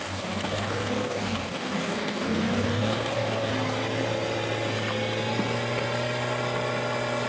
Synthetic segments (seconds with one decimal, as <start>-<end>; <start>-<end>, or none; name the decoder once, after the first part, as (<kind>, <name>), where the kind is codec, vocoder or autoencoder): 0.0-3.5 (codec, DAC)